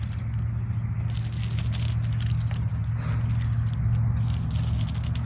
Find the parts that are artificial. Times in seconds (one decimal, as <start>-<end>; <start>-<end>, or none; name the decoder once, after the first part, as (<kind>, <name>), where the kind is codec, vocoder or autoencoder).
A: none